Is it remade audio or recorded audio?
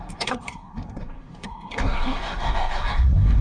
remade